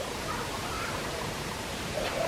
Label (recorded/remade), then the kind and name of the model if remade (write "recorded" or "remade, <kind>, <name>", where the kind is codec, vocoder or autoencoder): remade, vocoder, BigVGAN v2